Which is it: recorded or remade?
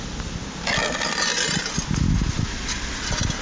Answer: recorded